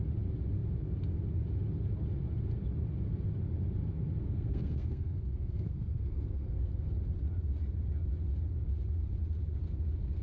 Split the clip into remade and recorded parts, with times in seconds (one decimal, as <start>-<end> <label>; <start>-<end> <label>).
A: 0.0-4.2 recorded; 4.2-6.9 remade; 6.9-10.2 recorded